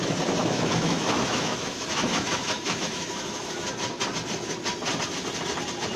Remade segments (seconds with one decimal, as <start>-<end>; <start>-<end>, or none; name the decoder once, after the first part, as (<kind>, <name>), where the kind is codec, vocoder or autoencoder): 0.4-3.4 (autoencoder, DAC-VAE)